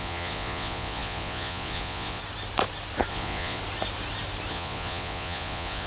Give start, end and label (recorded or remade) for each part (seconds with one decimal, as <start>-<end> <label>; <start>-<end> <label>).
0.0-2.2 remade; 2.2-3.1 recorded; 3.1-3.6 remade; 3.6-4.5 recorded; 4.5-5.9 remade